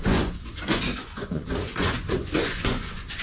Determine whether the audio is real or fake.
fake